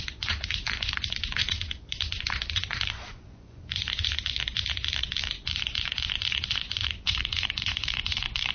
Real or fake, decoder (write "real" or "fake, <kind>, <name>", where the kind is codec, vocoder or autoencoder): fake, vocoder, Vocos